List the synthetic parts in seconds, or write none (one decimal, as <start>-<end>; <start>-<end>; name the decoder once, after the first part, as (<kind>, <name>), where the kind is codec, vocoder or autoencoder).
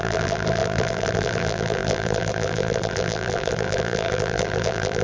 0.0-5.0 (vocoder, BigVGAN v2)